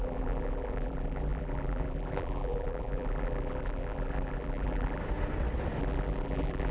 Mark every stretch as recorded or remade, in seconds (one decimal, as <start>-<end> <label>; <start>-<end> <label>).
0.0-5.0 remade; 5.0-5.8 recorded; 5.8-6.7 remade